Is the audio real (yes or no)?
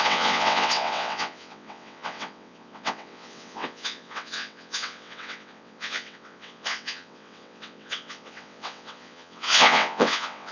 no